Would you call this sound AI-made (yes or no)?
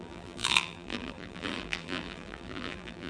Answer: yes